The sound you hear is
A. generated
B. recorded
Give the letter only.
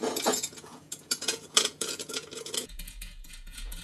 A